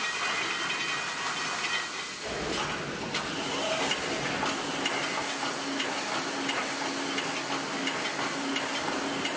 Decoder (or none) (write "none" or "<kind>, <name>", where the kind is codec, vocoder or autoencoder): none